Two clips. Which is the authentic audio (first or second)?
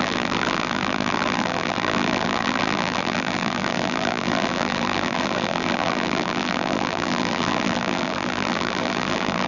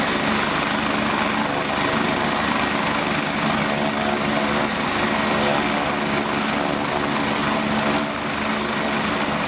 second